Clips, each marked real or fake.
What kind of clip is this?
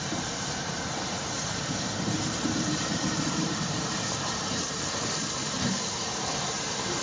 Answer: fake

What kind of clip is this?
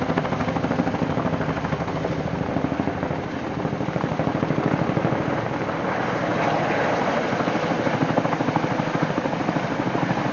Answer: real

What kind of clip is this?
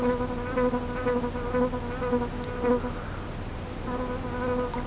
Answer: real